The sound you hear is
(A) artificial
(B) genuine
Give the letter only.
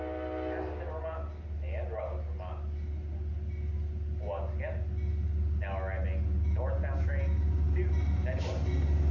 B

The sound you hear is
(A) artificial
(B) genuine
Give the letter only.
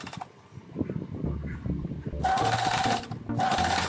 B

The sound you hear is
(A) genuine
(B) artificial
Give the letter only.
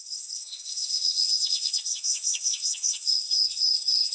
B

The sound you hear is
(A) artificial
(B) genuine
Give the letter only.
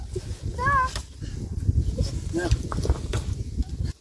B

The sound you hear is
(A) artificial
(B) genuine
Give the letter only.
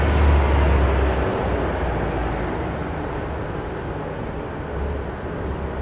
B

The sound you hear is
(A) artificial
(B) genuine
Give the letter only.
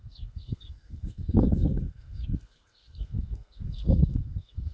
A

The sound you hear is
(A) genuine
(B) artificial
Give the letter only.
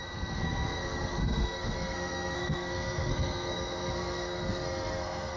B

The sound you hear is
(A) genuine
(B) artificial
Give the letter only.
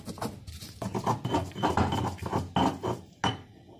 A